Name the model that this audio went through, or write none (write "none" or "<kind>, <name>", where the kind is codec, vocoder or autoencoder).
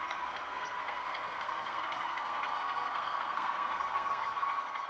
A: codec, SNAC